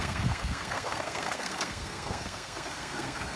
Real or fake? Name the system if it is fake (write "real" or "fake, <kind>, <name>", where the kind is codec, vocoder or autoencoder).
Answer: fake, codec, SNAC